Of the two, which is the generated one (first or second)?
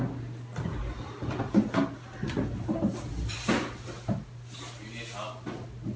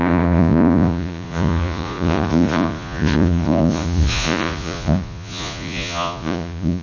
second